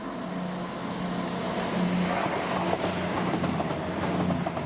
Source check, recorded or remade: recorded